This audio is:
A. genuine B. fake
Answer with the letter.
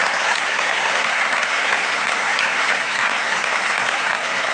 B